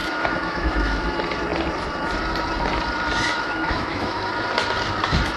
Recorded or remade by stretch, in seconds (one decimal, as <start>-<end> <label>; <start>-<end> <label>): 0.0-1.1 remade; 1.1-3.3 recorded; 3.3-4.3 remade; 4.3-5.4 recorded